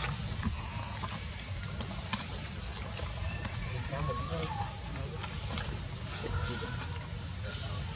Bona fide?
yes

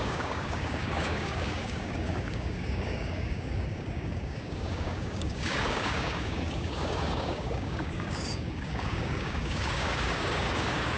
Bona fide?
no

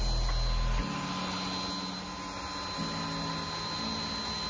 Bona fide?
yes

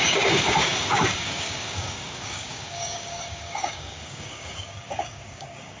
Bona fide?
no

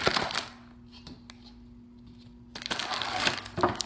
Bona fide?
yes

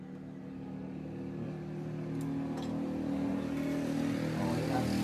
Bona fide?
yes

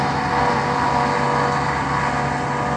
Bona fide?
yes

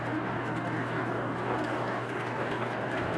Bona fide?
no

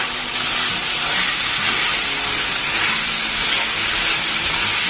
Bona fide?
yes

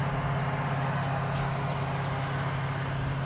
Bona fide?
yes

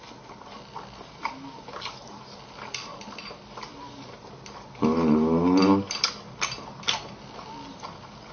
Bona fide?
yes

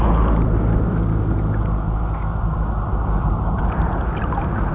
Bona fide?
yes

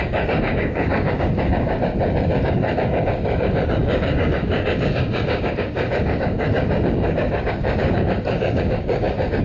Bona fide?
no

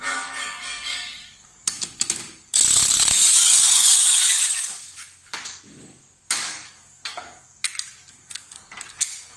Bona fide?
no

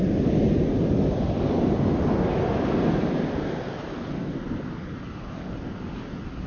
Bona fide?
yes